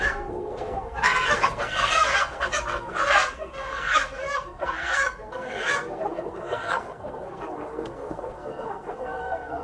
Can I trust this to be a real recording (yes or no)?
no